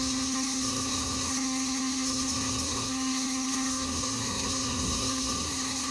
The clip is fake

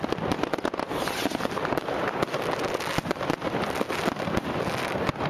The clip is real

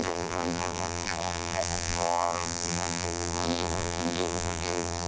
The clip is fake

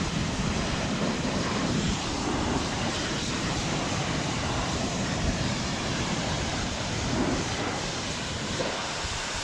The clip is fake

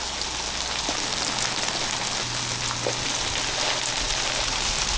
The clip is real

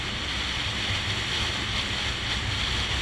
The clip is real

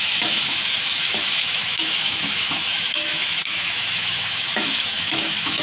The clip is fake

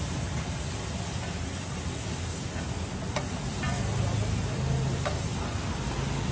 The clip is real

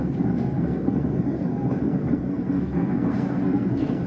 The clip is fake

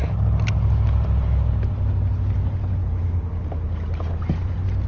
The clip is real